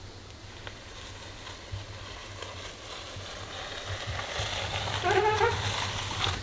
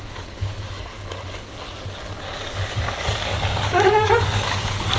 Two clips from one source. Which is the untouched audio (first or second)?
first